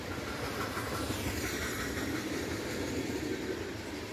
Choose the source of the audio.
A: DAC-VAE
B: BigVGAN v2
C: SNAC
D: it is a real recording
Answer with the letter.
B